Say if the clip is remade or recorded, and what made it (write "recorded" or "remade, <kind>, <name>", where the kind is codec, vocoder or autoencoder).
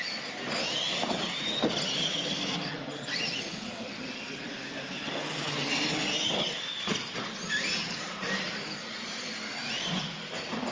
recorded